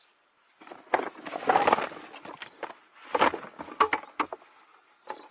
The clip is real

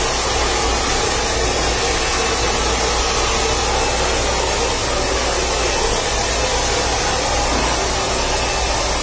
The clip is real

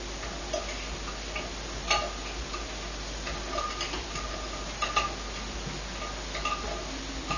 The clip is real